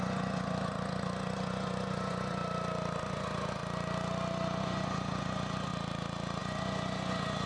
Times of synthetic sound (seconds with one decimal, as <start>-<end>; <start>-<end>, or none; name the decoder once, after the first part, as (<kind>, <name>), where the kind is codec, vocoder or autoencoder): 0.0-2.4 (vocoder, Vocos); 3.0-3.6; 4.6-5.7; 6.4-7.5